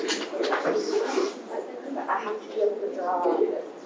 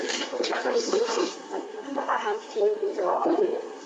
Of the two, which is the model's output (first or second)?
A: second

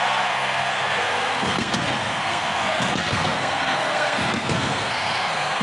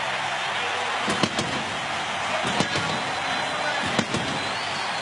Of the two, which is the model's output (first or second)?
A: first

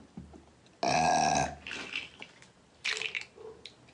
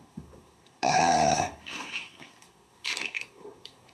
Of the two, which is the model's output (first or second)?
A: second